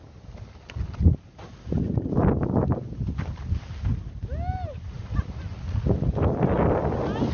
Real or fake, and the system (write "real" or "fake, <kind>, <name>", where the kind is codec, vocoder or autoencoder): real